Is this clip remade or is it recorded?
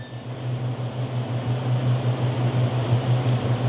recorded